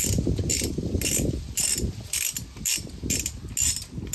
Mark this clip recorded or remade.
recorded